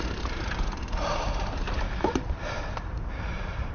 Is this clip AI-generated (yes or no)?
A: yes